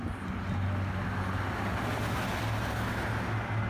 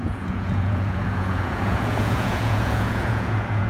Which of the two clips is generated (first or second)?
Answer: second